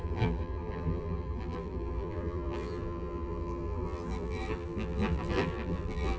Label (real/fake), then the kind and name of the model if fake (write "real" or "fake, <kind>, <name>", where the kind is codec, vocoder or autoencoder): fake, vocoder, BigVGAN v2